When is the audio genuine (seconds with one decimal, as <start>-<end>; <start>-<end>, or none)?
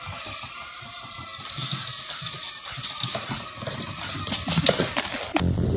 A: 0.0-5.8